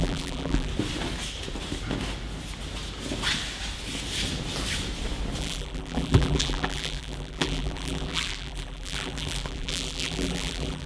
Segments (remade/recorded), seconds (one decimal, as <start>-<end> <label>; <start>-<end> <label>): 0.0-0.7 remade; 0.7-5.4 recorded; 5.4-10.9 remade